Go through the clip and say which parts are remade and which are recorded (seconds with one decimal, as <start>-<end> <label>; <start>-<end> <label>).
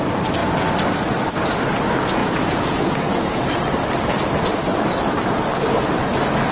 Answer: 0.0-2.2 recorded; 2.2-3.6 remade; 3.6-6.5 recorded